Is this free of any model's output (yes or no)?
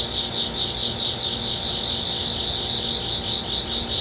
yes